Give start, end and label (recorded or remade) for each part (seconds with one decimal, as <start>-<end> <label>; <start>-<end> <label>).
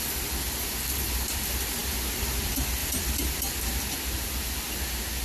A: 0.0-2.8 recorded; 2.8-3.4 remade; 3.4-5.2 recorded